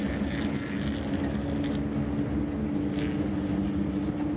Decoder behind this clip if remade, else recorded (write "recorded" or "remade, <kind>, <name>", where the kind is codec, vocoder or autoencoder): recorded